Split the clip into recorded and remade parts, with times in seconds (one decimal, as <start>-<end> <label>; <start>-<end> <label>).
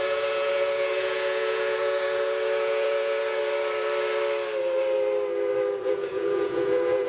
0.0-3.4 remade; 3.4-5.8 recorded; 5.8-7.1 remade